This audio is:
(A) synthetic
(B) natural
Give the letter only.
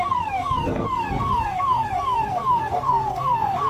A